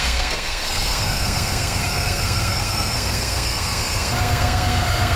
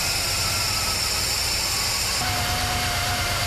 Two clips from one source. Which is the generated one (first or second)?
first